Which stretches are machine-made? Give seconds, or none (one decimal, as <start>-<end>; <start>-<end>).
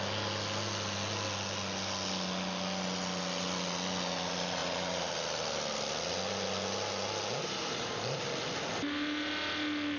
none